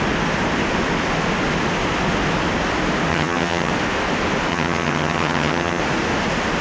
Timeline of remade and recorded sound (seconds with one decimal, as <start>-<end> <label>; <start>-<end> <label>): 0.0-3.1 recorded; 3.1-3.7 remade; 3.7-4.5 recorded; 4.5-5.8 remade; 5.8-6.6 recorded